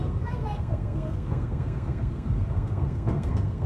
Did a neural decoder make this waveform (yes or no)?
yes